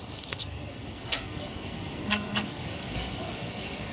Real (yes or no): no